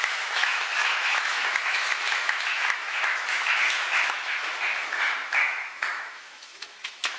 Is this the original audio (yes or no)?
no